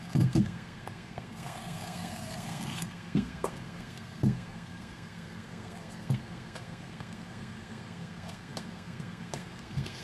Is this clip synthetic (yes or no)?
yes